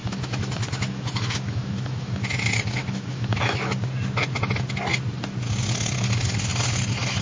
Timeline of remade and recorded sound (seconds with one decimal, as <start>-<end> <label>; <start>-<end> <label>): 0.0-3.7 remade; 3.7-7.2 recorded

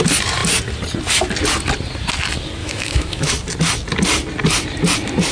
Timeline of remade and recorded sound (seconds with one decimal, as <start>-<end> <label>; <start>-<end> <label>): 0.0-2.6 recorded; 2.6-3.3 remade; 3.3-5.3 recorded

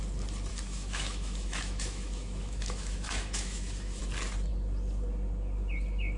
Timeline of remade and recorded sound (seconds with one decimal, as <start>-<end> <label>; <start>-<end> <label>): 0.0-0.5 recorded; 0.5-4.0 remade; 4.0-6.2 recorded

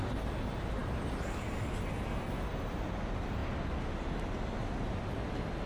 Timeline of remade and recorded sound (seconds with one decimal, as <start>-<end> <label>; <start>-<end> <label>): 0.0-5.7 recorded